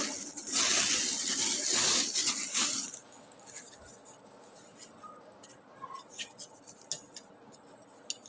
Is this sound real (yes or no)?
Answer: yes